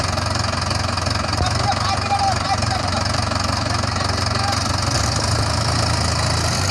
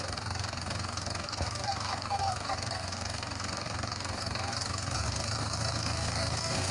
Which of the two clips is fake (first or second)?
second